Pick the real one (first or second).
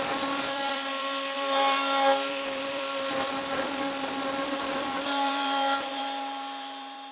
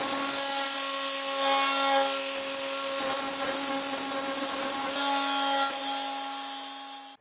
second